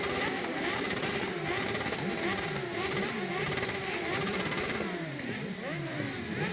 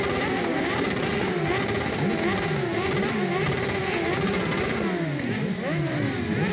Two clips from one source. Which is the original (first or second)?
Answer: second